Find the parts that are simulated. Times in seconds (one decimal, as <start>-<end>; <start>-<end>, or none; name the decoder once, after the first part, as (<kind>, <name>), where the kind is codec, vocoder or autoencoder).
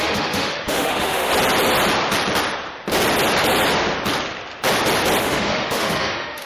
0.0-1.3 (autoencoder, DAC-VAE); 5.2-6.5